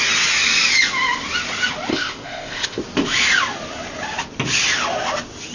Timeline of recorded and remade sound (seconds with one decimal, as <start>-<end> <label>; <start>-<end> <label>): 0.0-1.9 recorded; 1.9-2.8 remade; 2.8-5.5 recorded